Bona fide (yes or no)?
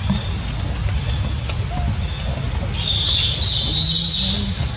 yes